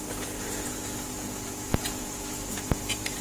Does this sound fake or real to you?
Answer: fake